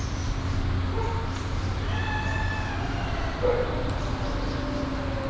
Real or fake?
real